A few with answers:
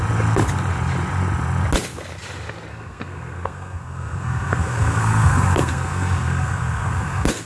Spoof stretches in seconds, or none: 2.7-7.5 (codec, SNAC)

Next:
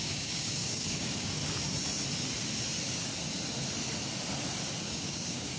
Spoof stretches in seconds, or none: 0.0-1.4 (codec, DAC); 4.8-5.6

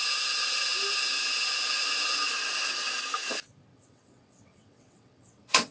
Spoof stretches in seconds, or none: 3.7-5.7 (vocoder, WaveNeXt)